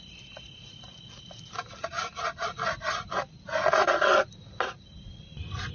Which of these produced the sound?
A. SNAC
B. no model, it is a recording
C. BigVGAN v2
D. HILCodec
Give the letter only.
B